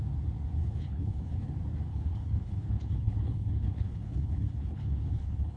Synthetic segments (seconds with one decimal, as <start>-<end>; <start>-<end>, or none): 0.6-1.5; 1.9-5.6

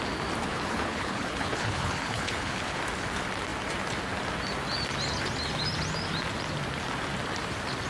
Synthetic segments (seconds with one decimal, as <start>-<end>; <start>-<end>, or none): 0.5-2.8

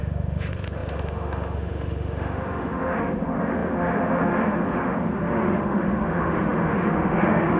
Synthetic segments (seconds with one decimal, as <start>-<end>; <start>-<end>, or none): 0.0-7.6

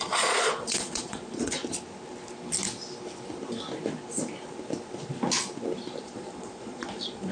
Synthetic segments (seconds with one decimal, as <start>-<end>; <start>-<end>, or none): 0.0-1.6; 6.0-7.3

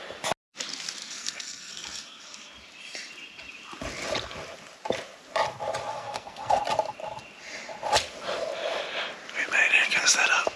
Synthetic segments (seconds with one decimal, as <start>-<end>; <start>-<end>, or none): 1.0-2.5; 5.9-6.6

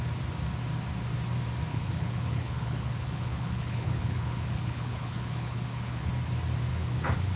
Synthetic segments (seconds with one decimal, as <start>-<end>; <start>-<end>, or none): 1.7-6.1; 6.7-7.4

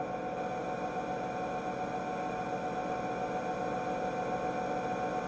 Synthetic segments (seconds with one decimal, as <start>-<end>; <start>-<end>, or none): none